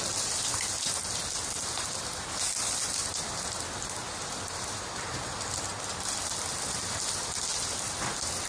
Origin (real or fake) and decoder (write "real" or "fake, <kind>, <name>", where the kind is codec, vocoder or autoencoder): real